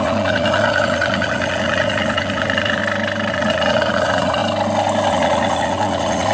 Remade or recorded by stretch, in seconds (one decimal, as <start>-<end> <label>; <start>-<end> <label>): 0.0-2.8 remade; 2.8-3.3 recorded; 3.3-4.4 remade; 4.4-5.1 recorded; 5.1-6.3 remade